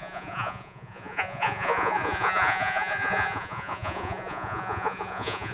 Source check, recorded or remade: remade